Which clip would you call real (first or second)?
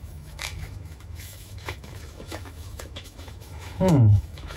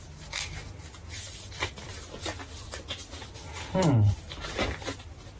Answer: second